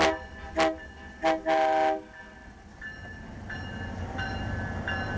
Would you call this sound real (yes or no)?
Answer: yes